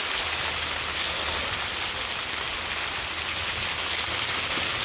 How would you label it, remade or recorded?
recorded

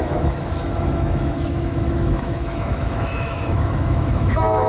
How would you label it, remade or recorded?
remade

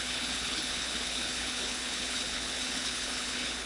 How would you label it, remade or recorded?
remade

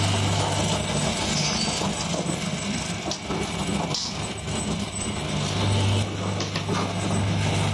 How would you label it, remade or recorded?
recorded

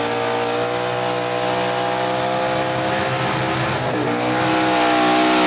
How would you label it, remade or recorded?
recorded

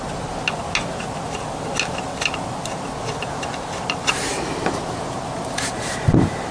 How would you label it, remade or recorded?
recorded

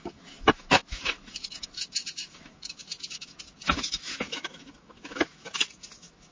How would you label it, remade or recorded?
remade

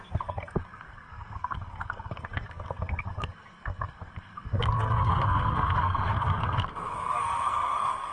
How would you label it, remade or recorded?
remade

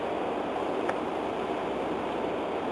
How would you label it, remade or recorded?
recorded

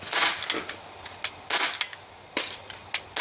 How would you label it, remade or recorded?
recorded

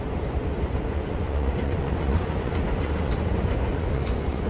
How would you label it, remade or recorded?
remade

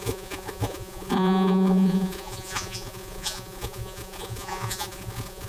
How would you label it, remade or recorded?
remade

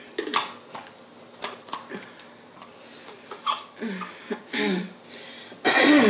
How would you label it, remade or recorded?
recorded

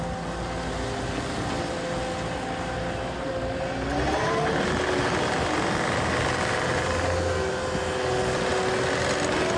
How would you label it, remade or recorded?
recorded